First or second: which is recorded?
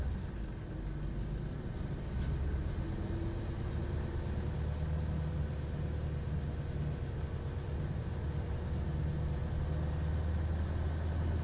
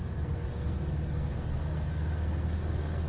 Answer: first